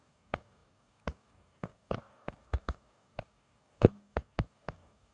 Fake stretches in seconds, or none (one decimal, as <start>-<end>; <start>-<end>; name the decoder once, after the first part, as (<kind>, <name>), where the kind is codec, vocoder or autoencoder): 0.0-5.1 (codec, DAC)

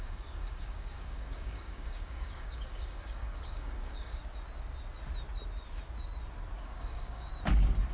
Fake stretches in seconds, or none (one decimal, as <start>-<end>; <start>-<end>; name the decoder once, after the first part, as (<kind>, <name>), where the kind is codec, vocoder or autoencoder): 0.0-4.2 (codec, DAC); 6.6-7.3

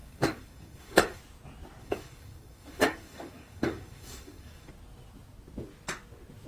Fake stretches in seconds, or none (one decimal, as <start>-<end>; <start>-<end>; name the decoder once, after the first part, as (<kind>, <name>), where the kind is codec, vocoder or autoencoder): 0.0-1.2 (codec, DAC); 1.8-4.7

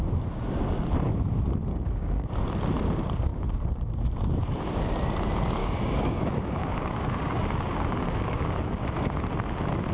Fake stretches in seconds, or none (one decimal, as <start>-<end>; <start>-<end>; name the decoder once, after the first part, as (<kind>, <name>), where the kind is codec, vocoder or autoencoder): 1.7-2.3 (codec, DAC); 5.6-8.8

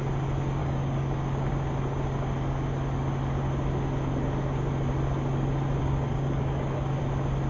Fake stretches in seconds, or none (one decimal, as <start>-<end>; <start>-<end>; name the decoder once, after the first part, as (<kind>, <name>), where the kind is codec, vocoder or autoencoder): 0.6-1.5 (codec, DAC); 5.8-7.0

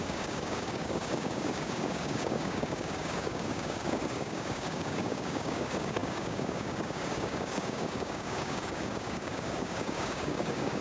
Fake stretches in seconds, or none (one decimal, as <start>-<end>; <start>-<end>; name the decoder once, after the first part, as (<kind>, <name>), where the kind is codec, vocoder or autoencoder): 0.0-10.8 (codec, DAC)

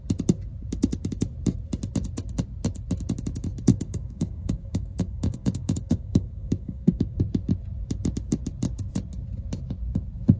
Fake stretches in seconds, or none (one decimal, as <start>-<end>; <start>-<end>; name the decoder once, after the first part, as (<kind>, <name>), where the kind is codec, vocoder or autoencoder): 3.7-7.2 (codec, DAC)

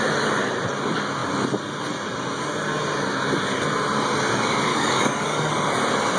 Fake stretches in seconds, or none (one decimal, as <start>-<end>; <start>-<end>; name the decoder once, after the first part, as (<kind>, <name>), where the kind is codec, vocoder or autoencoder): 4.7-5.5 (codec, DAC)